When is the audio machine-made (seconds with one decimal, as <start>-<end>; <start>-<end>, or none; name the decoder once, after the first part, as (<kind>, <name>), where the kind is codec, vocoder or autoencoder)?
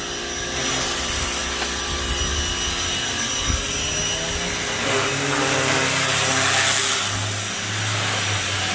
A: none